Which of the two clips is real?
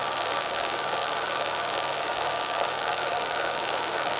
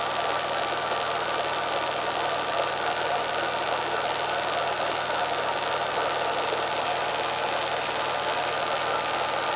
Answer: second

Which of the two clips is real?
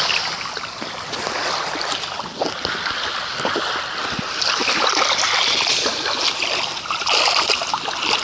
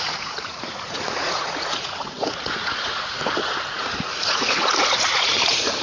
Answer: first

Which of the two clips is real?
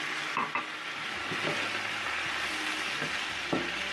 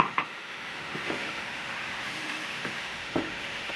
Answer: first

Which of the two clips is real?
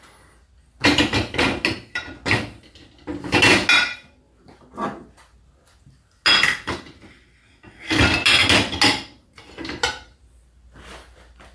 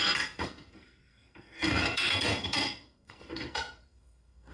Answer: first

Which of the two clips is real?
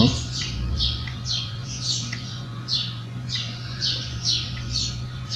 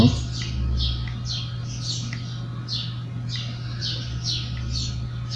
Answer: second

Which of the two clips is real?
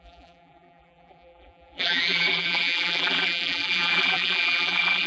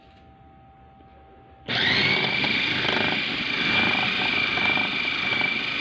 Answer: second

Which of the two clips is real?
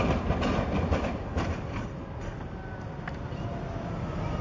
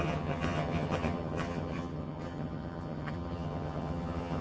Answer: first